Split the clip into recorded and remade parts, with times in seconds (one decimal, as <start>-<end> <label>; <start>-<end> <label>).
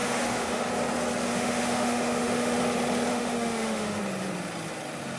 0.0-0.7 remade; 0.7-1.3 recorded; 1.3-2.6 remade; 2.6-3.1 recorded; 3.1-4.0 remade; 4.0-5.2 recorded